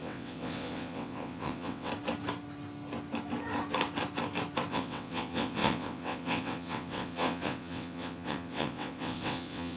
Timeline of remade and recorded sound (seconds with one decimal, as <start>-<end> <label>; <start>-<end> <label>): 0.0-1.9 remade; 1.9-4.7 recorded; 4.7-9.8 remade